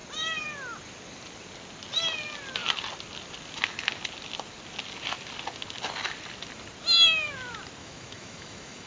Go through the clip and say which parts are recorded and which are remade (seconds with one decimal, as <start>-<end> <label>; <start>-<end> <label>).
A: 0.0-7.8 recorded; 7.8-8.9 remade

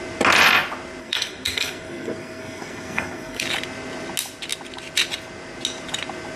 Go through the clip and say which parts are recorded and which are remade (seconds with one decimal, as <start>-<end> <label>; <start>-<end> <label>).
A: 0.0-1.0 recorded; 1.0-3.4 remade; 3.4-6.4 recorded

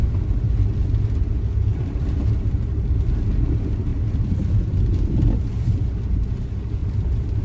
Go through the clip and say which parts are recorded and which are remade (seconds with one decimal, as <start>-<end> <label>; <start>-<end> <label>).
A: 0.0-1.7 recorded; 1.7-3.0 remade; 3.0-6.8 recorded; 6.8-7.4 remade

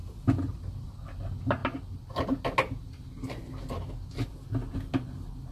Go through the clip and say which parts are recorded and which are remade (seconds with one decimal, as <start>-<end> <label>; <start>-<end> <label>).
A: 0.0-0.9 remade; 0.9-5.5 recorded

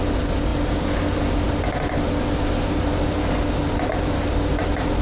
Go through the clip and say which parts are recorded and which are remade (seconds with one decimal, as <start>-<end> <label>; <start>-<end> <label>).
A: 0.0-5.0 recorded